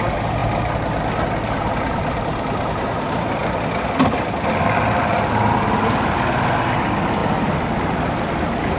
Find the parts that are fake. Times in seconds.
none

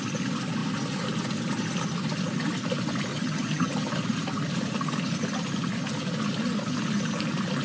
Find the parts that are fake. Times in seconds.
3.1-3.9